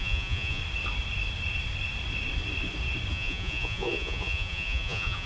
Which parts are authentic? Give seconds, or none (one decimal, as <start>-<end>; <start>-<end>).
0.6-3.1